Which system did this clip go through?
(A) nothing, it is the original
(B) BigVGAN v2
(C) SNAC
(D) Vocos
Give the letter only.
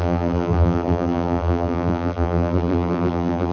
B